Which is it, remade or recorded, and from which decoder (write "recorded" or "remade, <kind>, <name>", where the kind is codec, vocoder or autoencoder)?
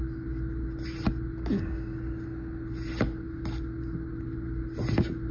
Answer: recorded